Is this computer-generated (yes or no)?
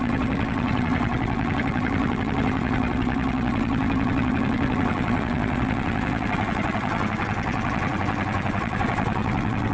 yes